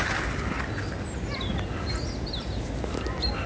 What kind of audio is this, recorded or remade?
recorded